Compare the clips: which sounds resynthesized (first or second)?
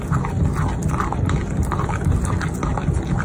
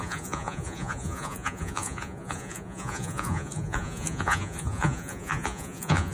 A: second